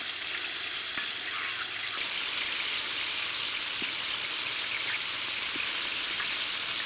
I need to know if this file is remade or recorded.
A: recorded